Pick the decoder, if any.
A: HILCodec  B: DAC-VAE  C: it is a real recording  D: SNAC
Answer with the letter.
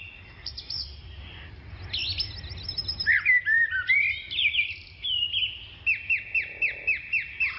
C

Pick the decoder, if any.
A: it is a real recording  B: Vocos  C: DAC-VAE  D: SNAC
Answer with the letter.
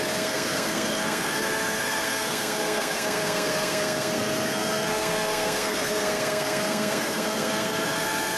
D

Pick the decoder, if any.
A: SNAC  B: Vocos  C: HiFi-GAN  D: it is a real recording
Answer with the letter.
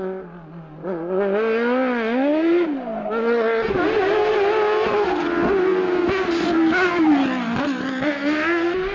D